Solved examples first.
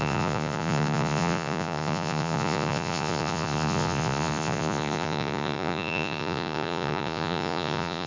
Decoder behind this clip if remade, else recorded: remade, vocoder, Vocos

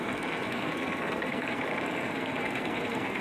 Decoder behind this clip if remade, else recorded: remade, codec, SNAC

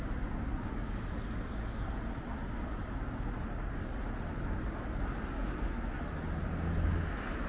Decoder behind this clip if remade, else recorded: recorded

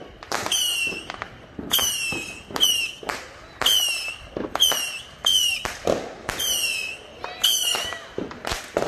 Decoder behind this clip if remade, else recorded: recorded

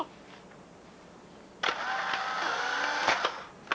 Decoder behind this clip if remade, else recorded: recorded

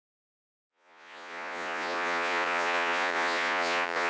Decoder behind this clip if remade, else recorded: remade, vocoder, Vocos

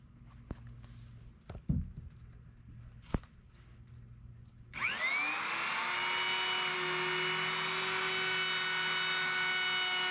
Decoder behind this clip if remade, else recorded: recorded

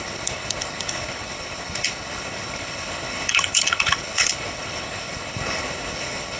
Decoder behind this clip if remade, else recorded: remade, codec, HILCodec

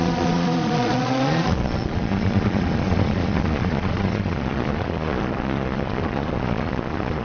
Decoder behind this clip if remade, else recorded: remade, vocoder, Vocos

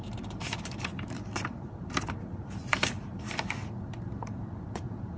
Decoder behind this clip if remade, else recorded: remade, vocoder, BigVGAN v2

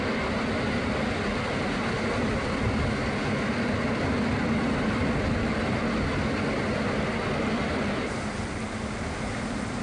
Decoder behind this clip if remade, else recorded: recorded